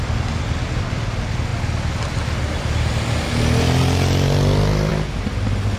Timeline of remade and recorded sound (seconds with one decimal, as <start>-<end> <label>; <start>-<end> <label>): 0.0-5.8 recorded